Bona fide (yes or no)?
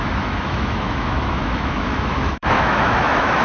no